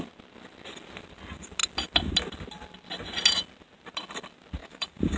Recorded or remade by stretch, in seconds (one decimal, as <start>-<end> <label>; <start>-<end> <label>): 0.0-4.6 recorded; 4.6-5.2 remade